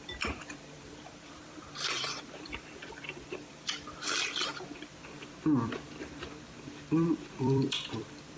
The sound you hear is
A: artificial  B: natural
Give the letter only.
A